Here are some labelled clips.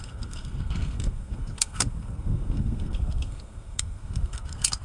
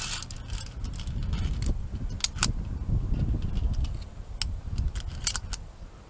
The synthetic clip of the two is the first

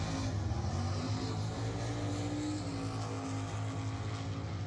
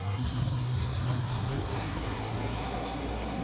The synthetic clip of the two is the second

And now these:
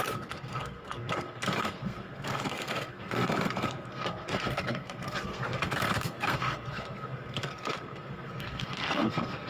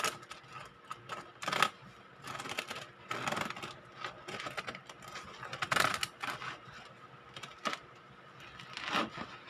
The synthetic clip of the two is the first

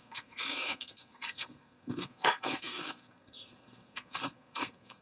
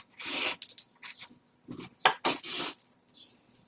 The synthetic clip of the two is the first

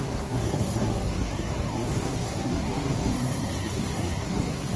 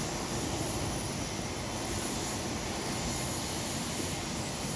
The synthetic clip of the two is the first